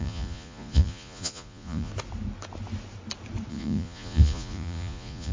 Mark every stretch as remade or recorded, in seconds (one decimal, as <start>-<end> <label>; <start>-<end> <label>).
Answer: 0.0-1.9 remade; 1.9-3.5 recorded; 3.5-5.3 remade